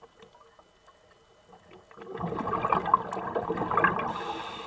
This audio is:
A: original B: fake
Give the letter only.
A